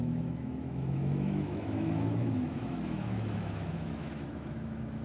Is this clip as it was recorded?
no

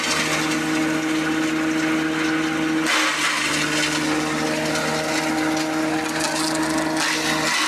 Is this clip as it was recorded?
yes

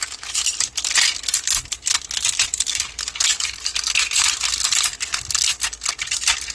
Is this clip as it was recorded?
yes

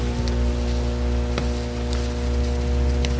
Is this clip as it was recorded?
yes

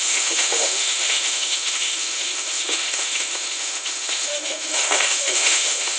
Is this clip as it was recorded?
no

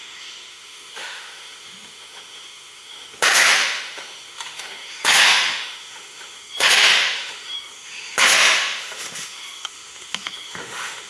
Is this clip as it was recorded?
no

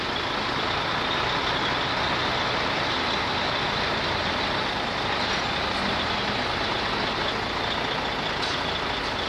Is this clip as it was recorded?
yes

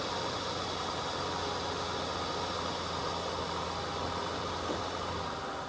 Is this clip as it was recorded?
yes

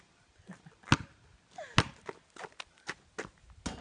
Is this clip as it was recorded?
yes